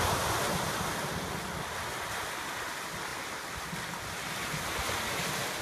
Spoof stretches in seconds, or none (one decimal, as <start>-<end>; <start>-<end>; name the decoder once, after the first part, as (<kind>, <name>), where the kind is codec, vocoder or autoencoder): none